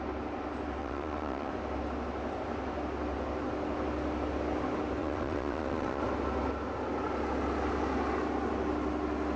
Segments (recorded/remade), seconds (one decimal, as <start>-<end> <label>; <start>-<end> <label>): 0.0-0.8 recorded; 0.8-1.5 remade; 1.5-5.0 recorded; 5.0-6.0 remade; 6.0-9.4 recorded